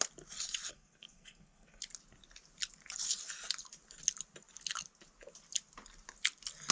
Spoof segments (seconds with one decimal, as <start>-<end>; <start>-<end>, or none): 0.7-1.8